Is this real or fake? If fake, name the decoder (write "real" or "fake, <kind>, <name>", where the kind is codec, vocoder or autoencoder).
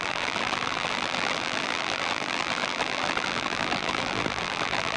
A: fake, vocoder, BigVGAN v2